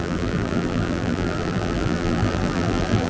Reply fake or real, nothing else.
fake